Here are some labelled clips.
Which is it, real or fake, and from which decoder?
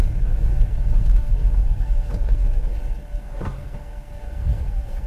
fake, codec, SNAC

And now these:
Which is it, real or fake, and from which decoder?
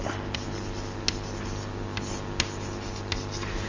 real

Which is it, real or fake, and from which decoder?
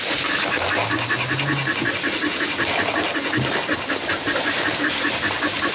real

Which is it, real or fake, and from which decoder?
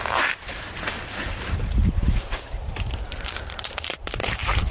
fake, vocoder, BigVGAN v2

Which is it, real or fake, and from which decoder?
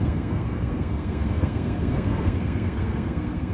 fake, codec, SNAC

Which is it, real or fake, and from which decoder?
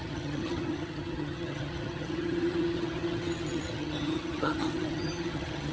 fake, vocoder, HiFi-GAN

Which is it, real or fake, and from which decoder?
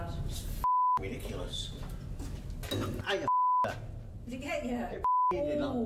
real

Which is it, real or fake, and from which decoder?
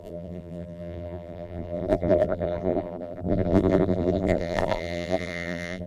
fake, vocoder, BigVGAN v2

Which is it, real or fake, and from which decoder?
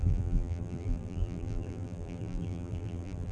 fake, vocoder, BigVGAN v2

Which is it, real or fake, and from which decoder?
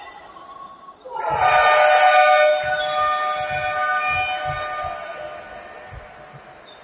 real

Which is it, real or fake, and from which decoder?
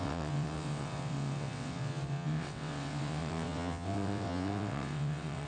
fake, vocoder, WaveNeXt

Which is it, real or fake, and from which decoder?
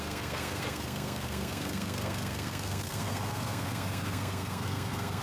fake, codec, SNAC